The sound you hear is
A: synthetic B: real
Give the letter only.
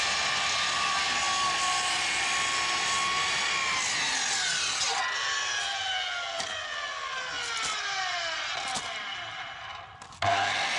B